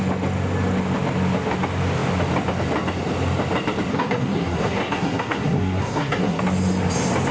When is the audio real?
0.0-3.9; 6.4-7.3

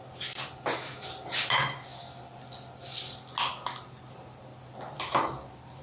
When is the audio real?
0.0-5.8

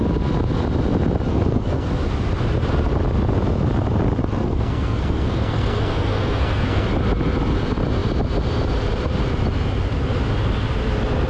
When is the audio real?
0.0-1.3; 1.9-4.2; 6.9-11.3